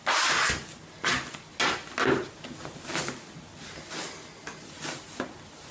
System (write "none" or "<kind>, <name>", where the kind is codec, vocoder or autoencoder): none